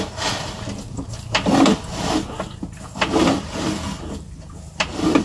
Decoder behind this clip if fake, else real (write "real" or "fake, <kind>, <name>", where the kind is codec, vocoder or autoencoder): real